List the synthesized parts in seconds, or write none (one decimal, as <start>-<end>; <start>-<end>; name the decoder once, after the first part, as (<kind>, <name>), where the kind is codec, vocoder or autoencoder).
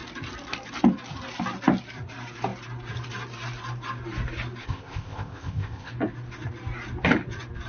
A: 4.6-5.9 (codec, ZipCodec)